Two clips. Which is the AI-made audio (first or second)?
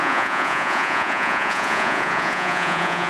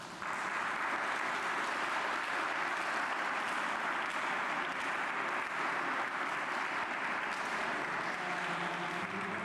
first